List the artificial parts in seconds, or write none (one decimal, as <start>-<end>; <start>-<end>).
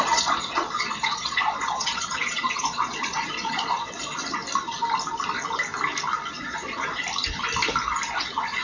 0.0-4.2; 6.3-7.0; 8.1-8.6